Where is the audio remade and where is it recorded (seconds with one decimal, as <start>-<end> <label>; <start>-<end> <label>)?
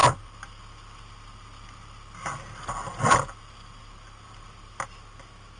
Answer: 0.0-5.6 recorded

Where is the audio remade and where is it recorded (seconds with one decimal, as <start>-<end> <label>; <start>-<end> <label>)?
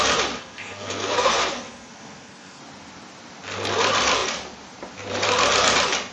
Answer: 0.0-0.4 recorded; 0.4-2.6 remade; 2.6-6.1 recorded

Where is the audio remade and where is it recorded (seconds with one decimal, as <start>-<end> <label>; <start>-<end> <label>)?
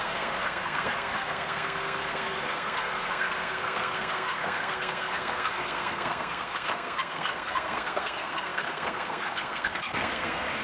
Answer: 0.0-10.6 remade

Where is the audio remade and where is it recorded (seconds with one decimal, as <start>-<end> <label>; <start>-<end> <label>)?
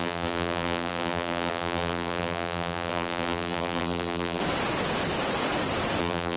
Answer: 0.0-4.4 remade; 4.4-6.0 recorded; 6.0-6.4 remade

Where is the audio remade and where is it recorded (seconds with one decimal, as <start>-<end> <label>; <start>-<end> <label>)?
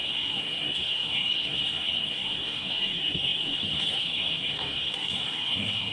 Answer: 0.0-5.9 remade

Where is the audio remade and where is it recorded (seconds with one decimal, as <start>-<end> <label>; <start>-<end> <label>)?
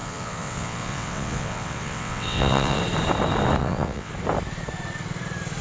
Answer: 0.0-2.8 remade; 2.8-3.6 recorded; 3.6-4.1 remade; 4.1-5.6 recorded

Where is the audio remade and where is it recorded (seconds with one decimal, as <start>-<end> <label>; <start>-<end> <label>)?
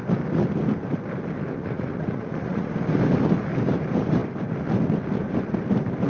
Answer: 0.0-1.5 recorded; 1.5-2.7 remade; 2.7-6.1 recorded